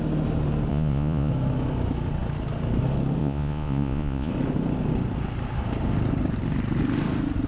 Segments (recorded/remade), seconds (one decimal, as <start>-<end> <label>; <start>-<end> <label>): 0.0-0.7 recorded; 0.7-1.3 remade; 1.3-3.2 recorded; 3.2-4.3 remade; 4.3-7.5 recorded